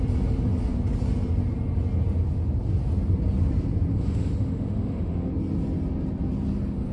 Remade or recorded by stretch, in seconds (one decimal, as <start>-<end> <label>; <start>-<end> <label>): 0.0-3.9 recorded; 3.9-5.3 remade; 5.3-6.9 recorded